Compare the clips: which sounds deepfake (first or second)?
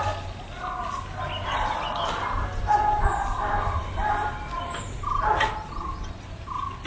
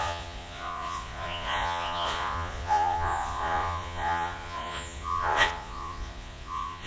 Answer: second